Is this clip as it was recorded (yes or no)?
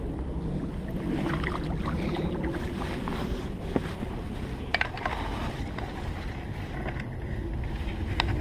yes